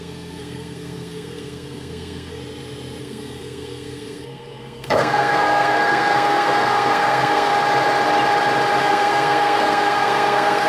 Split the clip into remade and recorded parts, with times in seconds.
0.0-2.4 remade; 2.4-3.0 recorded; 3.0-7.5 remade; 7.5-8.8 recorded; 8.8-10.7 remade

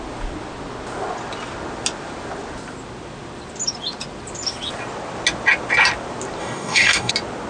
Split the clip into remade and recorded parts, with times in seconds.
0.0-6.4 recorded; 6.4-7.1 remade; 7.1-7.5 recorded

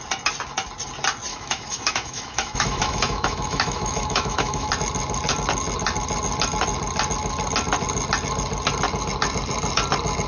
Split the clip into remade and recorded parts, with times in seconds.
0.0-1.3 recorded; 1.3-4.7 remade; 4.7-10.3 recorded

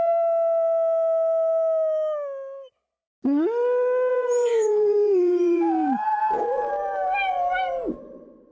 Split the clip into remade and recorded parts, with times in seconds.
0.0-4.1 recorded; 4.1-6.7 remade; 6.7-8.5 recorded

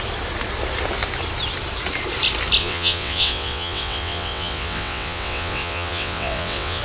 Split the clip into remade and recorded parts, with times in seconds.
0.0-2.6 recorded; 2.6-6.8 remade

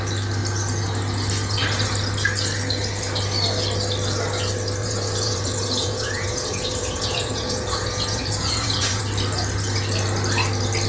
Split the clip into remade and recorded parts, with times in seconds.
0.0-4.8 recorded; 4.8-9.0 remade; 9.0-10.9 recorded

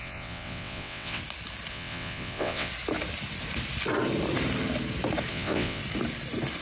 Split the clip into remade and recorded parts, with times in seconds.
0.0-1.2 remade; 1.2-1.7 recorded; 1.7-2.7 remade; 2.7-5.3 recorded; 5.3-5.8 remade; 5.8-6.6 recorded

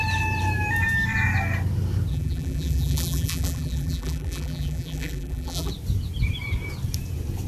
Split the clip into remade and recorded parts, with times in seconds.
0.0-2.1 recorded; 2.1-5.7 remade; 5.7-7.5 recorded